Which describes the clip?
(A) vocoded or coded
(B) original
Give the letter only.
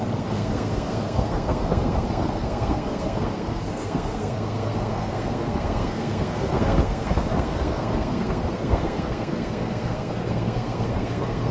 A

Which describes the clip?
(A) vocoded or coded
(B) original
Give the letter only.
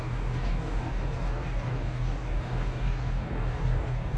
A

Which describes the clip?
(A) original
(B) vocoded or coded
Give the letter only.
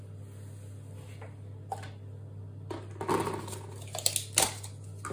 A